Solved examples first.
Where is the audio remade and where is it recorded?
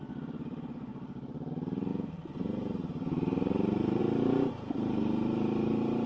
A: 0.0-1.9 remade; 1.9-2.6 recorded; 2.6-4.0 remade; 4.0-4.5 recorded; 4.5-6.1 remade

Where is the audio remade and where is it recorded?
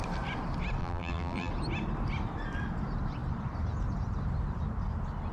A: 0.0-0.8 recorded; 0.8-1.5 remade; 1.5-5.3 recorded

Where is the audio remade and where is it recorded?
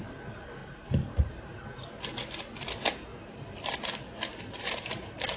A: 0.0-0.6 recorded; 0.6-1.3 remade; 1.3-4.3 recorded; 4.3-5.4 remade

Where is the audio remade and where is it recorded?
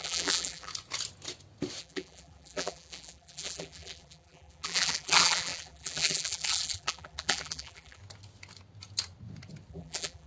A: 0.0-0.7 remade; 0.7-1.8 recorded; 1.8-8.0 remade; 8.0-9.7 recorded; 9.7-10.3 remade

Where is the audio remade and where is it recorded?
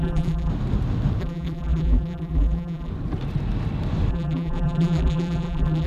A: 0.0-0.5 remade; 0.5-1.2 recorded; 1.2-2.9 remade; 2.9-4.1 recorded; 4.1-5.9 remade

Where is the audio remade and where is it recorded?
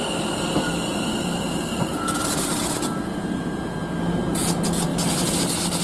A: 0.0-0.9 recorded; 0.9-4.4 remade; 4.4-4.9 recorded; 4.9-5.8 remade